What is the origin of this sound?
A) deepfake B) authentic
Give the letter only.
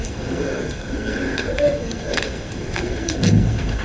A